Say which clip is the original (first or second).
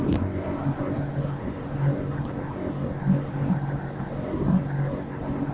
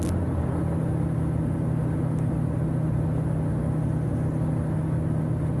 second